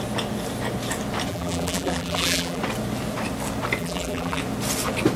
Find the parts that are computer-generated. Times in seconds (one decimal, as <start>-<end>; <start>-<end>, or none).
1.3-2.6; 3.8-4.4